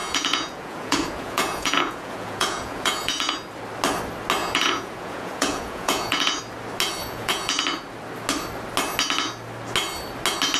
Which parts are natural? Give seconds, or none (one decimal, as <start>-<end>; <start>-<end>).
3.3-4.4; 6.4-7.0; 7.6-10.6